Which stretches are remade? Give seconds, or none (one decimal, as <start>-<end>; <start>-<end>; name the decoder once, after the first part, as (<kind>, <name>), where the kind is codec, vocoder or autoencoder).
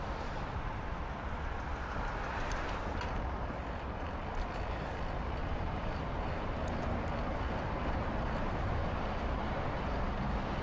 5.4-6.1 (vocoder, BigVGAN v2); 8.8-10.2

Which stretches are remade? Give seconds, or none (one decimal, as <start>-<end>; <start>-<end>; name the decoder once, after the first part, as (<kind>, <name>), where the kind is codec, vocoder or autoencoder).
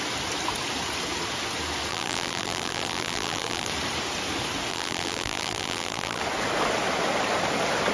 1.9-3.7 (vocoder, BigVGAN v2); 4.7-6.2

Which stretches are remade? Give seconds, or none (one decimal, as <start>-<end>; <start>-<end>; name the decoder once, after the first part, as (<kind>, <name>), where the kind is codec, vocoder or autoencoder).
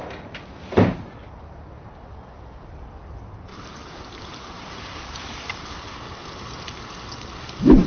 3.5-5.9 (vocoder, BigVGAN v2)